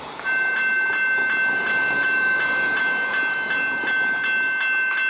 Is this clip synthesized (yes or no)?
no